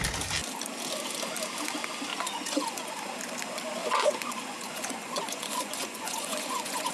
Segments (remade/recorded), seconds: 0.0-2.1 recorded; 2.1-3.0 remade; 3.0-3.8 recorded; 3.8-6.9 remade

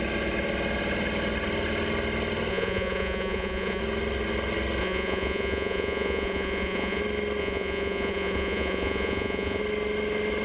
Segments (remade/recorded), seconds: 0.0-2.5 recorded; 2.5-3.8 remade; 3.8-4.8 recorded; 4.8-7.0 remade; 7.0-7.4 recorded; 7.4-9.6 remade; 9.6-10.4 recorded

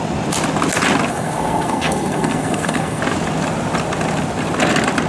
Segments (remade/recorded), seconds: 0.0-1.1 recorded; 1.1-3.0 remade; 3.0-5.1 recorded

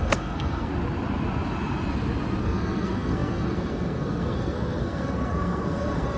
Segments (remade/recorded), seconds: 0.0-0.7 remade; 0.7-2.4 recorded; 2.4-6.2 remade

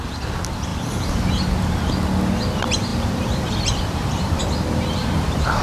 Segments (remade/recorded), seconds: 0.0-0.7 recorded; 0.7-1.3 remade; 1.3-2.9 recorded; 2.9-4.4 remade; 4.4-5.0 recorded; 5.0-5.6 remade

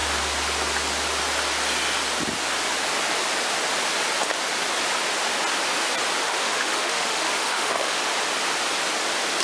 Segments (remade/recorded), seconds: 0.0-6.2 recorded; 6.2-8.0 remade; 8.0-9.4 recorded